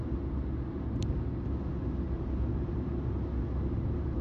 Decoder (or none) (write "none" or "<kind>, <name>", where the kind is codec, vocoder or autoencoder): none